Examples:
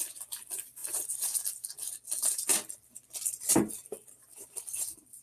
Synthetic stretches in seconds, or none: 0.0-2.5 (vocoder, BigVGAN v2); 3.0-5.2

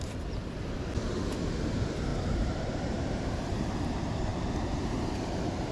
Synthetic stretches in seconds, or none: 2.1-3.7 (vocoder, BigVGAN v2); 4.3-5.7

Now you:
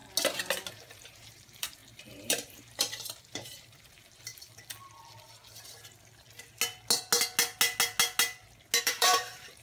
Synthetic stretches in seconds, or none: 0.7-4.3 (vocoder, BigVGAN v2); 8.8-9.6

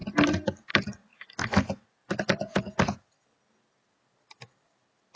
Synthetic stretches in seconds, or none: 0.7-1.1 (vocoder, BigVGAN v2); 4.2-5.2

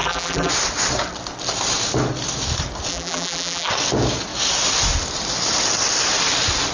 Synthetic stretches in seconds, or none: 0.0-0.5 (vocoder, BigVGAN v2); 2.9-3.7